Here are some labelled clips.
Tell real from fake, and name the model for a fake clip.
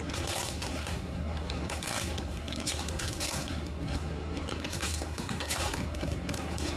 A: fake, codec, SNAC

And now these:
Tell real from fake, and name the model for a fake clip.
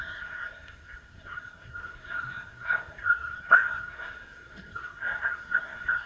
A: fake, codec, SNAC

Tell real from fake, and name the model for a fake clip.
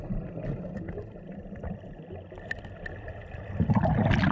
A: real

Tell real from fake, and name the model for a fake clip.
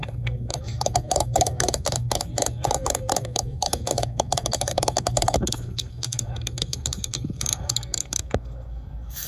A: fake, codec, SNAC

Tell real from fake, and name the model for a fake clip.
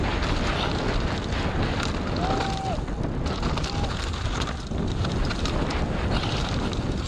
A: real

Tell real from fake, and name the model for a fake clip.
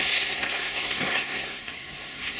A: fake, codec, SNAC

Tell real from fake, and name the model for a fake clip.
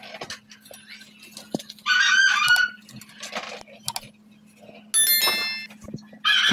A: real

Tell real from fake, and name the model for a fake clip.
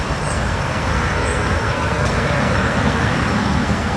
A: fake, codec, SNAC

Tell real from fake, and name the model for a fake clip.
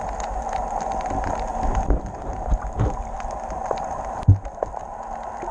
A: real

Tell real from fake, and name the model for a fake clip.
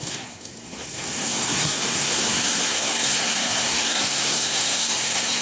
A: fake, codec, SNAC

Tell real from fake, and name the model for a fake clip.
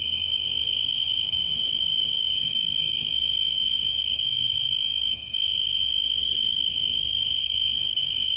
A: fake, codec, SNAC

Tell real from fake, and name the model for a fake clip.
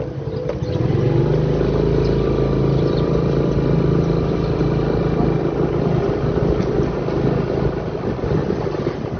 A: real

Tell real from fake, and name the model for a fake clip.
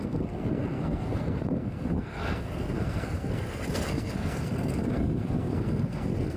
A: fake, codec, SNAC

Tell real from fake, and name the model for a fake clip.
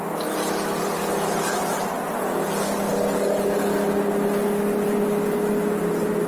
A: real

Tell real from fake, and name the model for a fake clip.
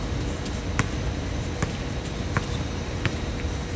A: real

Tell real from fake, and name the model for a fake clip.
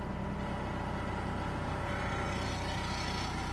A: real